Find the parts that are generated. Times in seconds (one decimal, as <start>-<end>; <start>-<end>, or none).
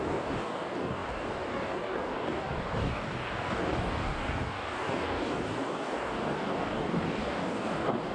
0.0-8.1